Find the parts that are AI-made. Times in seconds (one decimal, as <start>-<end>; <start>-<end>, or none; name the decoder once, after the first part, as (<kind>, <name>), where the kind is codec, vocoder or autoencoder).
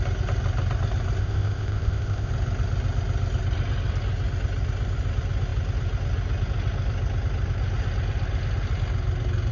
1.2-2.3 (codec, ZipCodec)